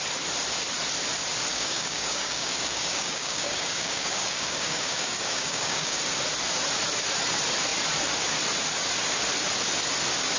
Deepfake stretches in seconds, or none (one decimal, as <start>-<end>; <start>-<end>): 1.5-6.0